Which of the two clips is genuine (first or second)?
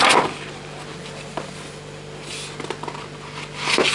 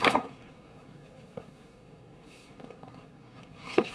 first